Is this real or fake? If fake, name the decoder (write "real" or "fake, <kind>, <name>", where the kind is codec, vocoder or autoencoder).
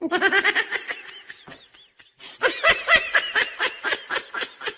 real